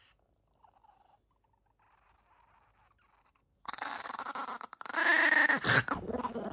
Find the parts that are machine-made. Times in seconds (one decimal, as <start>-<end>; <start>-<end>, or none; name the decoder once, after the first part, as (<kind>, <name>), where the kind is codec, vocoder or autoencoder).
3.2-4.2 (codec, SNAC)